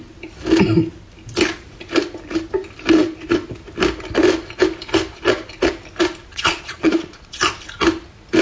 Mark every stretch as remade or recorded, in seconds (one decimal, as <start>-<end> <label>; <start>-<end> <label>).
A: 0.0-6.3 recorded; 6.3-7.4 remade; 7.4-8.4 recorded